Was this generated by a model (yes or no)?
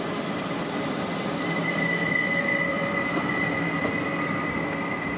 yes